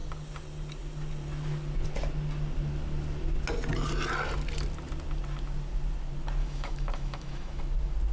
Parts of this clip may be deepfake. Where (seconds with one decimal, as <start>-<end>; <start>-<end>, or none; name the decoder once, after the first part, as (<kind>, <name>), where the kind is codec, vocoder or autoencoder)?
6.4-7.6 (autoencoder, DAC-VAE)